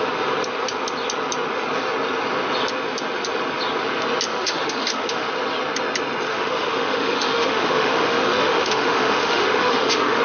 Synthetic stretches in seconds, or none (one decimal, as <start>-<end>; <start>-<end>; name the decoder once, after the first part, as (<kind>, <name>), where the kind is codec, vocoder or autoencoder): 4.3-5.3 (autoencoder, DAC-VAE); 6.3-10.2